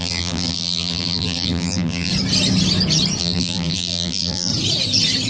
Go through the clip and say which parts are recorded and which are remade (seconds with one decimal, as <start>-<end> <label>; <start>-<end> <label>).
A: 0.0-2.1 remade; 2.1-3.2 recorded; 3.2-4.5 remade; 4.5-5.3 recorded

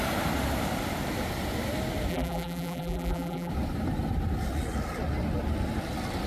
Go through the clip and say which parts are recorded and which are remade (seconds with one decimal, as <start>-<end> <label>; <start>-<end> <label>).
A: 0.0-2.1 recorded; 2.1-3.5 remade; 3.5-6.3 recorded

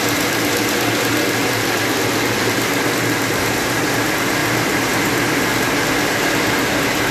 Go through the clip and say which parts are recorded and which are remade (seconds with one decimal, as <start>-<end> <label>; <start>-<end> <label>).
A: 0.0-4.4 recorded; 4.4-5.6 remade; 5.6-7.1 recorded

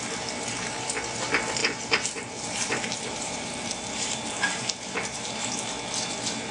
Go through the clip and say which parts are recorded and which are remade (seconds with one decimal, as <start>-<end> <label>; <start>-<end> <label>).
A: 0.0-1.6 recorded; 1.6-5.3 remade; 5.3-6.5 recorded

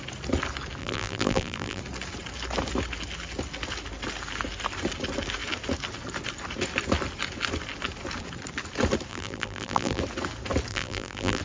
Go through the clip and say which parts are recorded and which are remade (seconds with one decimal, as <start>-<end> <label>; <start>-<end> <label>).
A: 0.0-0.8 recorded; 0.8-1.8 remade; 1.8-9.1 recorded; 9.1-10.0 remade; 10.0-10.7 recorded; 10.7-11.4 remade

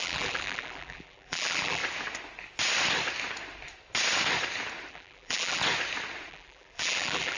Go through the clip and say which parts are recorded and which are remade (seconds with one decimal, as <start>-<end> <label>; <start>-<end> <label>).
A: 0.0-1.8 remade; 1.8-4.9 recorded; 4.9-5.6 remade; 5.6-6.3 recorded; 6.3-7.4 remade

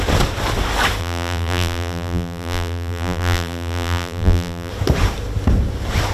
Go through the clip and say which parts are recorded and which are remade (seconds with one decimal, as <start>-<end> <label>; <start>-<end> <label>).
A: 0.0-1.0 recorded; 1.0-4.7 remade; 4.7-6.1 recorded